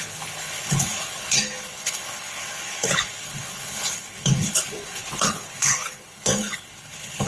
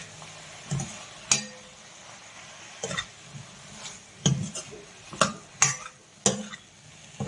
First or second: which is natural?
second